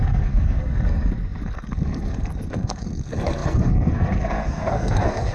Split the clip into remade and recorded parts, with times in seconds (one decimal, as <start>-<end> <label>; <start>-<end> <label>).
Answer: 0.0-5.3 remade